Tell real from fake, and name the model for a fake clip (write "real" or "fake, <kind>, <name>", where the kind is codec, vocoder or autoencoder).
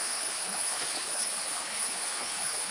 fake, codec, HILCodec